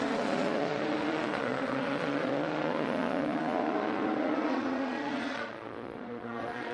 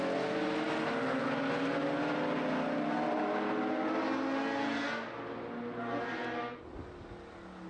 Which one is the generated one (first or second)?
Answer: first